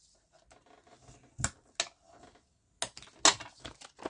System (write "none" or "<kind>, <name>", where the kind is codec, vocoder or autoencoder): none